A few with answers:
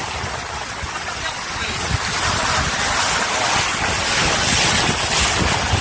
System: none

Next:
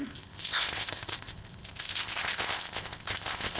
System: codec, ZipCodec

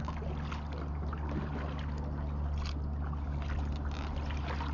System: none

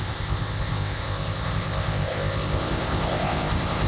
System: codec, ZipCodec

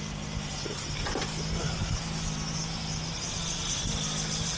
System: none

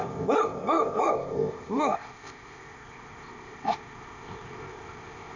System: codec, ZipCodec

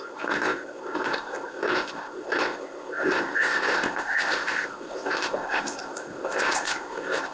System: codec, ZipCodec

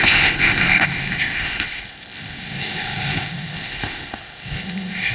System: codec, ZipCodec